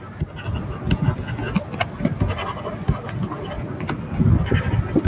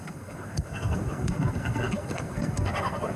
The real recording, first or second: first